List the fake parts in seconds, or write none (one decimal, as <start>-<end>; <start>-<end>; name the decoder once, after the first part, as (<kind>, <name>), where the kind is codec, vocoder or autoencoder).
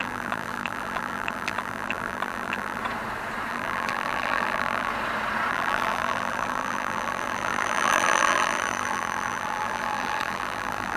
0.0-2.8 (vocoder, BigVGAN v2); 3.5-4.9; 5.5-11.0